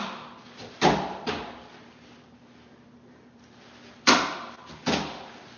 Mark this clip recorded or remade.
recorded